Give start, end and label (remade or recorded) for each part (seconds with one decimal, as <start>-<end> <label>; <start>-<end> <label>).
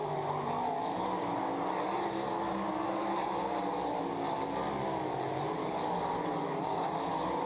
0.0-5.6 recorded; 5.6-6.6 remade; 6.6-7.5 recorded